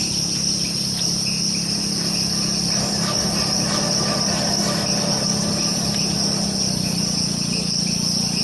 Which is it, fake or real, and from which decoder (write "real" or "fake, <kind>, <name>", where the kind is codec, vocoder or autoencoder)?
real